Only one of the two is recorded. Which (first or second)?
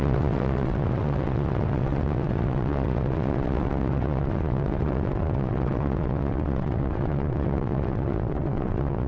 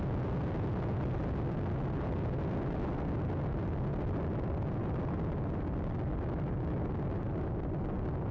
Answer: second